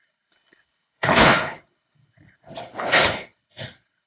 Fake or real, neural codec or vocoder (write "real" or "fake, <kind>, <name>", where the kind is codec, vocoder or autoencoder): fake, codec, HILCodec